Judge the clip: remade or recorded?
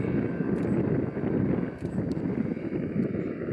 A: recorded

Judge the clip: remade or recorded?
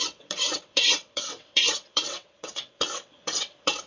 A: remade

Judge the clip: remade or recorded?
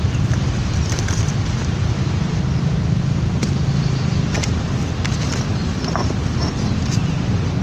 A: remade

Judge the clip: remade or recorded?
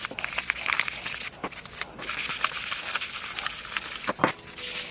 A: recorded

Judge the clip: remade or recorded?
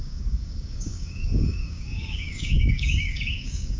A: remade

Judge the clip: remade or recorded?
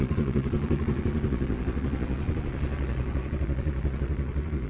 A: remade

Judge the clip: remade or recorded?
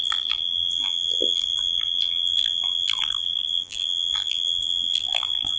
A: remade